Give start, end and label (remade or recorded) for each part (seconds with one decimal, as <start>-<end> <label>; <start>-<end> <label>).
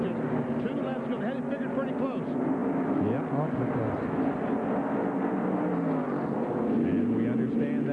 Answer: 0.0-7.9 recorded